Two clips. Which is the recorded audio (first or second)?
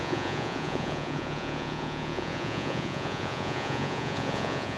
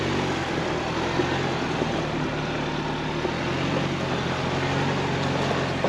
second